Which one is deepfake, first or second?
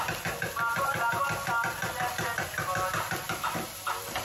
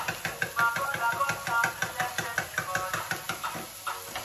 first